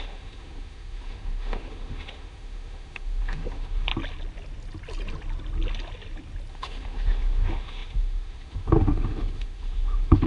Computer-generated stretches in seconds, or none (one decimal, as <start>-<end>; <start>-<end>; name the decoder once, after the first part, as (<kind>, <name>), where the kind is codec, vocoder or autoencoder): 0.0-3.9 (autoencoder, DAC-VAE); 6.5-10.3